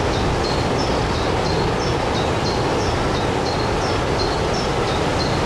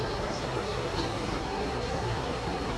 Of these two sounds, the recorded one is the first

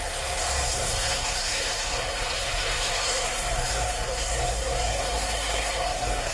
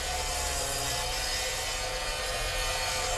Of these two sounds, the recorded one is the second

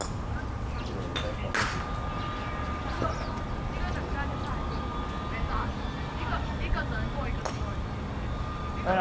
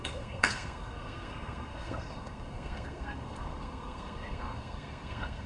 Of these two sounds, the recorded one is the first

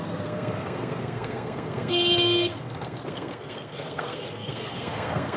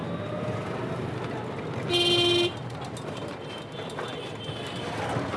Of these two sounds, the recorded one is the second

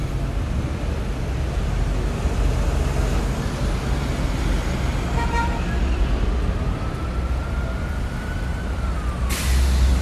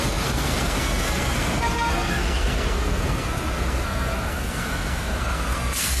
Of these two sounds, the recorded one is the first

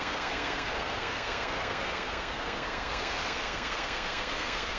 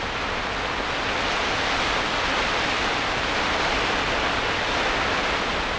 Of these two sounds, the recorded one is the second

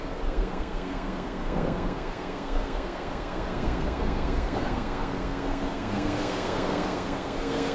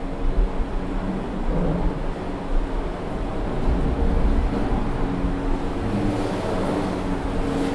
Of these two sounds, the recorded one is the second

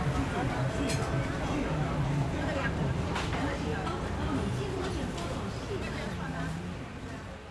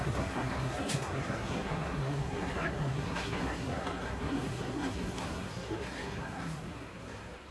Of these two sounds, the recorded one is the first